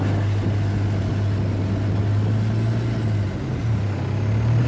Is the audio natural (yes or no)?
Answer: yes